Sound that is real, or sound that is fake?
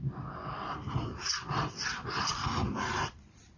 real